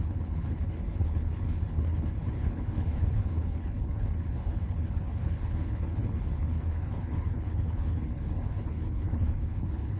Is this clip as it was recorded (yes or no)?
no